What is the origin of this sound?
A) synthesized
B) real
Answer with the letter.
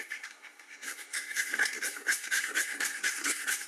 A